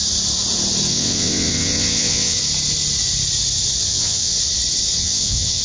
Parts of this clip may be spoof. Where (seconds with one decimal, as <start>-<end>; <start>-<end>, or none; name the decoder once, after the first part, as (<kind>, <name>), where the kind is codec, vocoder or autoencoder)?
0.9-2.4 (vocoder, WaveNeXt); 3.8-4.3; 4.9-5.6